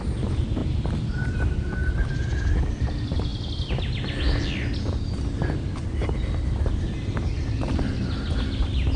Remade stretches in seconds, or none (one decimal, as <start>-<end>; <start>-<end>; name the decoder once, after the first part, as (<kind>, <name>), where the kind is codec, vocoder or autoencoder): none